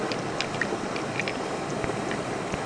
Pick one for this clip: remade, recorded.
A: recorded